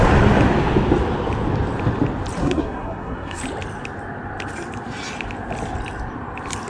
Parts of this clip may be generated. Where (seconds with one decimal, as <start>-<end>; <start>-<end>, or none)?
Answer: 2.4-3.4